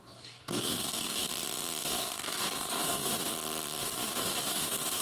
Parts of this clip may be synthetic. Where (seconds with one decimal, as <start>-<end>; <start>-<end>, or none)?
0.0-1.3; 1.8-3.3; 3.8-5.0